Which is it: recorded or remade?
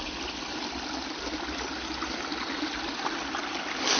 recorded